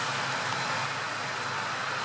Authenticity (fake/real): real